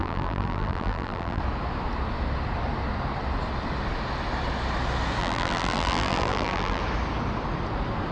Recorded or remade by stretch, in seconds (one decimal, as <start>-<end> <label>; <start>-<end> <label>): 0.0-1.4 remade; 1.4-5.2 recorded; 5.2-6.8 remade; 6.8-8.1 recorded

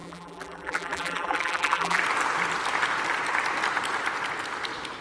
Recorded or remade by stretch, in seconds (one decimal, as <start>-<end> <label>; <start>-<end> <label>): 0.0-2.0 remade; 2.0-5.0 recorded

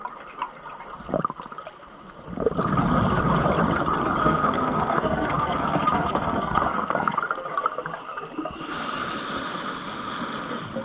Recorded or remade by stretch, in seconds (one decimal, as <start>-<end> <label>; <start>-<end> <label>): 0.0-4.2 recorded; 4.2-7.2 remade; 7.2-10.8 recorded